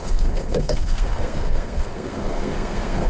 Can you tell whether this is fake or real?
fake